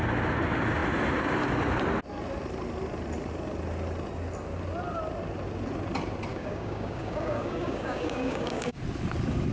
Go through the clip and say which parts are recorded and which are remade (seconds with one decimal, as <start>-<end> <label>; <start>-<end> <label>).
0.0-6.3 recorded; 6.3-8.8 remade; 8.8-9.5 recorded